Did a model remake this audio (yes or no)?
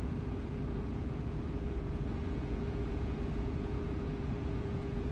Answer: yes